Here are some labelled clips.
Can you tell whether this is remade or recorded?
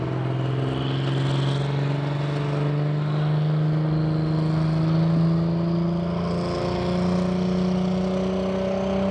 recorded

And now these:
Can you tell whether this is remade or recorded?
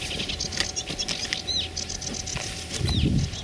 recorded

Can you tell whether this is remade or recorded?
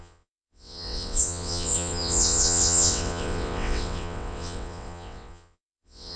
remade